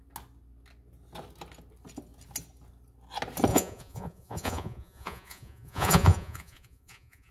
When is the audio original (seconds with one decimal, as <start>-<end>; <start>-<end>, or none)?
0.0-3.5